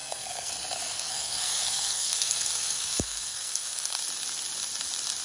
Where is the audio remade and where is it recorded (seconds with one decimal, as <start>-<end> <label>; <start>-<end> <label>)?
0.0-0.5 remade; 0.5-0.9 recorded; 0.9-4.0 remade; 4.0-5.2 recorded

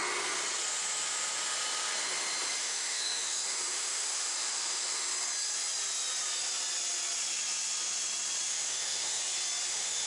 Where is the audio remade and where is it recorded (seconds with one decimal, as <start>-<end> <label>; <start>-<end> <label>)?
0.0-2.6 recorded; 2.6-5.1 remade; 5.1-8.5 recorded; 8.5-9.2 remade; 9.2-9.7 recorded; 9.7-10.1 remade

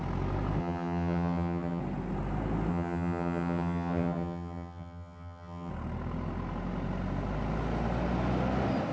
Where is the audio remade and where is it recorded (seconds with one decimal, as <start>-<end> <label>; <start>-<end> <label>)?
0.0-0.6 recorded; 0.6-1.8 remade; 1.8-2.7 recorded; 2.7-5.7 remade; 5.7-8.9 recorded

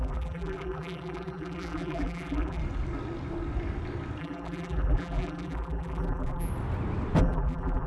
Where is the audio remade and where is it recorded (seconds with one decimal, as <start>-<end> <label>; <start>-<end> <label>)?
0.0-2.6 remade; 2.6-4.2 recorded; 4.2-6.5 remade; 6.5-7.2 recorded; 7.2-7.9 remade

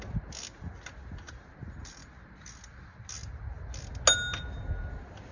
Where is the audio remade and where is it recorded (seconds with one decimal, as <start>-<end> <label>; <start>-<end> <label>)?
0.0-5.3 recorded